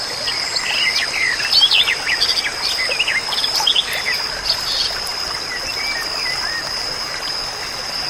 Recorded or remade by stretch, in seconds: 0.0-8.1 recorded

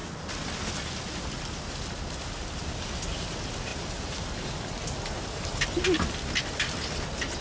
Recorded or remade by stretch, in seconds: 0.0-2.0 recorded; 2.0-3.7 remade; 3.7-7.4 recorded

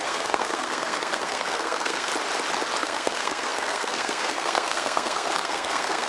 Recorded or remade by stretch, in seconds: 0.0-2.1 remade; 2.1-2.8 recorded; 2.8-6.1 remade

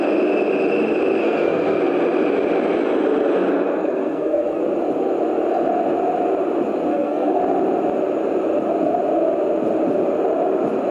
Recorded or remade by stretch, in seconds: 0.0-1.2 recorded; 1.2-1.8 remade; 1.8-3.8 recorded; 3.8-4.6 remade; 4.6-6.9 recorded; 6.9-7.4 remade; 7.4-10.9 recorded

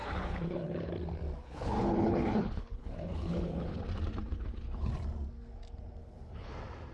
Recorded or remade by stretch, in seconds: 0.0-0.9 remade; 0.9-1.4 recorded; 1.4-3.8 remade; 3.8-4.3 recorded; 4.3-4.9 remade; 4.9-6.0 recorded; 6.0-6.5 remade; 6.5-6.9 recorded

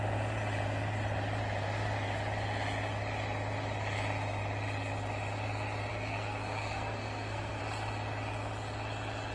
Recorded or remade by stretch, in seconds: 0.0-5.9 recorded; 5.9-7.6 remade; 7.6-9.3 recorded